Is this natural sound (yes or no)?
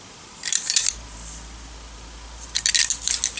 yes